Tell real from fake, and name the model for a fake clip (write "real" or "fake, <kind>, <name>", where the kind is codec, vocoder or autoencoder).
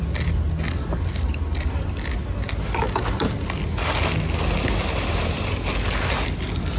real